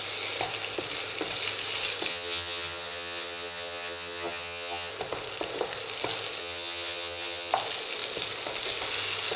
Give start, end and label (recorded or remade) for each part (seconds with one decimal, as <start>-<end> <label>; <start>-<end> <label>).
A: 0.0-2.1 recorded; 2.1-4.9 remade; 4.9-6.4 recorded; 6.4-7.5 remade; 7.5-9.4 recorded